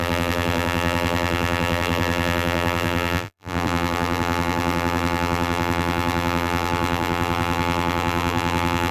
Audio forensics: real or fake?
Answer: fake